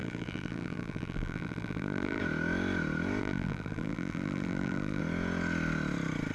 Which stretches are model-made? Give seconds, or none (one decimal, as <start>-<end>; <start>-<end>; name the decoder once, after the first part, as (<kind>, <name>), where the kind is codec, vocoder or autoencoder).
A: 0.0-2.2 (vocoder, BigVGAN v2); 3.2-5.0